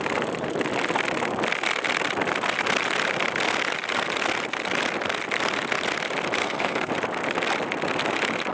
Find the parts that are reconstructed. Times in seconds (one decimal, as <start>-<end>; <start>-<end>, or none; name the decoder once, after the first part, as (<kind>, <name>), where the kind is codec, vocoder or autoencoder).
6.4-6.9 (codec, SNAC)